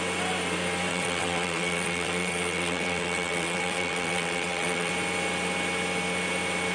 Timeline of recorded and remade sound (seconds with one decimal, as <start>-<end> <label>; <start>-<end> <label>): 0.0-0.9 recorded; 0.9-4.9 remade; 4.9-6.7 recorded